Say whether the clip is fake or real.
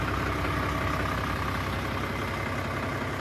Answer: real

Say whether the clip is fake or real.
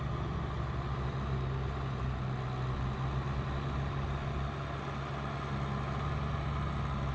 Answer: real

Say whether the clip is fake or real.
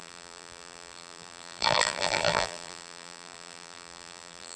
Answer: fake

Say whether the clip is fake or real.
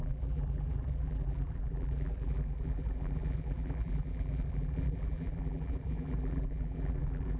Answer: fake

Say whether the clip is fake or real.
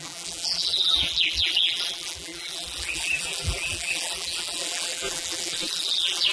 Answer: fake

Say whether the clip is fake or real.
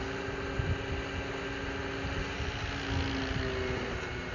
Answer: real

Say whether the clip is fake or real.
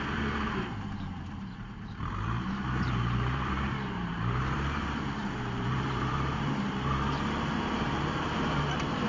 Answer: fake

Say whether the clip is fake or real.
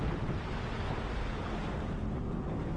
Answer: real